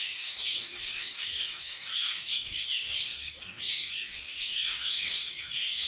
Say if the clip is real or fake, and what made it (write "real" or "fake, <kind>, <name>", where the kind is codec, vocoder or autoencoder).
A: fake, codec, DAC